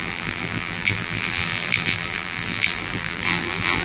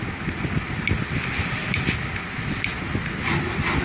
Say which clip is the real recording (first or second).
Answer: second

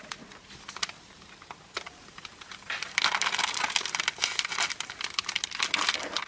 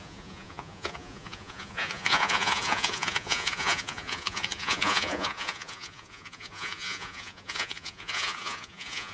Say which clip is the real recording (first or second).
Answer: first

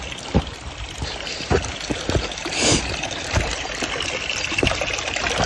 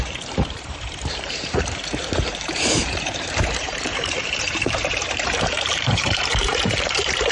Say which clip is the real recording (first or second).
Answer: first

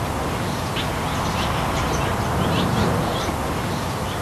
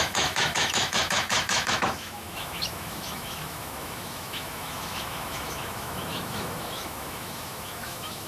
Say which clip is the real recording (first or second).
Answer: first